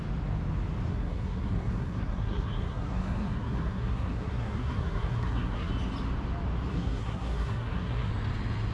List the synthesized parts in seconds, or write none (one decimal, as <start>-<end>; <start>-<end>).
0.9-5.7; 6.7-8.1